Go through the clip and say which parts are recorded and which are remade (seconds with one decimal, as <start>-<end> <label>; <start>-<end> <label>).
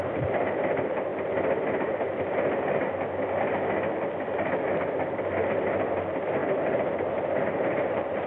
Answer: 0.0-1.1 remade; 1.1-5.9 recorded; 5.9-8.3 remade